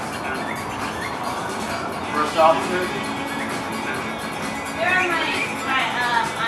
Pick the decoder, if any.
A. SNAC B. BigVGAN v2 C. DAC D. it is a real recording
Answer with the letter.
D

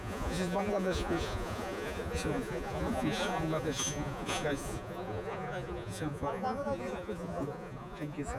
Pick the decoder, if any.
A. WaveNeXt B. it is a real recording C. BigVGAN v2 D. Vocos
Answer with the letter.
D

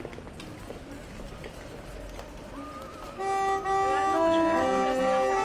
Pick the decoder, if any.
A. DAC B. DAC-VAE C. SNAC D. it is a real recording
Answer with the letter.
D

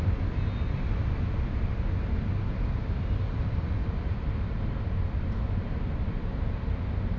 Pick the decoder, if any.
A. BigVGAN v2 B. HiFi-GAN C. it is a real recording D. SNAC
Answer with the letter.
C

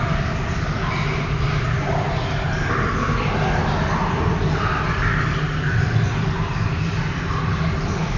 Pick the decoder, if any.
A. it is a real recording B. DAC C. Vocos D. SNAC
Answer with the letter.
A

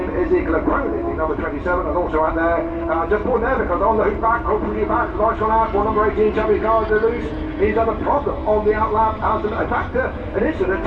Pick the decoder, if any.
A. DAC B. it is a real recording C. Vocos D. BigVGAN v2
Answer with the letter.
B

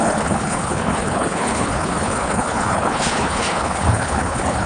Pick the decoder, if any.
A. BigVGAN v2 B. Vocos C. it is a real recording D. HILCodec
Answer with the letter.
D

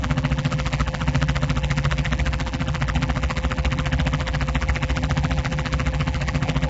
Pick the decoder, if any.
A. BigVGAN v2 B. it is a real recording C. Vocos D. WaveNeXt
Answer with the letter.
A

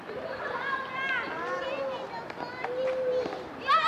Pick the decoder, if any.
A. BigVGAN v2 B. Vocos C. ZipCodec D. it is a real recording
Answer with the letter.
D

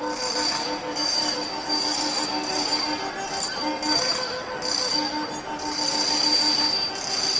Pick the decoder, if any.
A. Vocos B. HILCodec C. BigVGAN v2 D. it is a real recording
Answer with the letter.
D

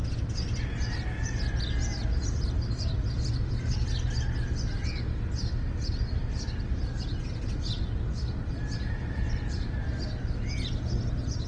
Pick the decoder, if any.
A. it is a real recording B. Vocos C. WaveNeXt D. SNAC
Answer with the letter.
A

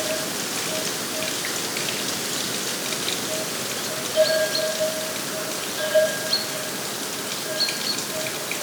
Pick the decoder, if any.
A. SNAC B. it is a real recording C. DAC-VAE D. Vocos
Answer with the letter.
B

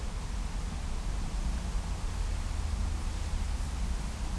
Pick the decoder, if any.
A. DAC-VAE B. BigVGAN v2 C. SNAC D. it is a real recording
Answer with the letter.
D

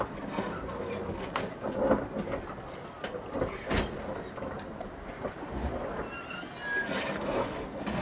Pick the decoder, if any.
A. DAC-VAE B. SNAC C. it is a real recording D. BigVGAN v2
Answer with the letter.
C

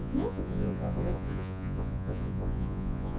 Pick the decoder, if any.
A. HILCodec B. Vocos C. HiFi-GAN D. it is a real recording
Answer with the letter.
B